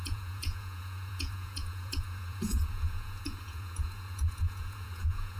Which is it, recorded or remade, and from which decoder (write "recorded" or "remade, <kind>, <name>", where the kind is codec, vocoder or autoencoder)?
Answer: remade, vocoder, Vocos